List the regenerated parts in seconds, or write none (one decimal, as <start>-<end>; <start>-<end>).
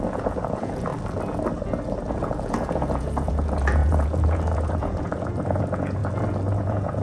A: 0.0-0.9; 2.1-6.0; 6.6-7.0